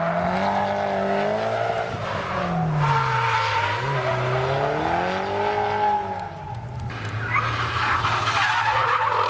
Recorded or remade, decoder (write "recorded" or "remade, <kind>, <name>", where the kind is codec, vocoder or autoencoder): recorded